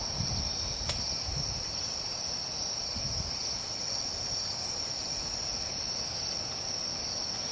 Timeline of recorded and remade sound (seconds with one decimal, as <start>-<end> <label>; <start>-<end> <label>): 0.0-7.5 recorded